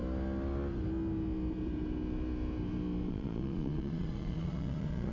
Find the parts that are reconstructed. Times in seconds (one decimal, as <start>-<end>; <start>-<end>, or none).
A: 3.1-5.1